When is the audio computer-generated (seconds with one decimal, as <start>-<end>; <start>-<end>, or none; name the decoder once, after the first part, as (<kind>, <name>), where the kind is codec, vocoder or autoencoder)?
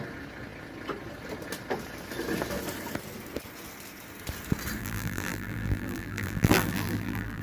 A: 4.8-7.4 (vocoder, BigVGAN v2)